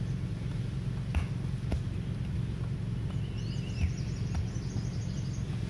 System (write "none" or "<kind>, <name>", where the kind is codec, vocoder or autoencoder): none